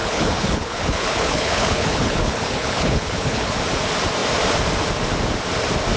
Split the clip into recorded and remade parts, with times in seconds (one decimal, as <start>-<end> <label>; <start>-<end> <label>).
0.0-3.6 remade; 3.6-6.0 recorded